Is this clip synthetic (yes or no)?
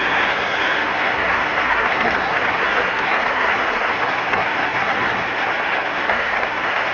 yes